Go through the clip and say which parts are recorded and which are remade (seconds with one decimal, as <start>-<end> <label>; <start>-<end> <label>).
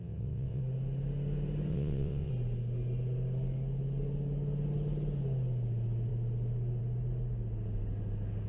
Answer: 0.0-0.6 remade; 0.6-1.7 recorded; 1.7-2.3 remade; 2.3-8.5 recorded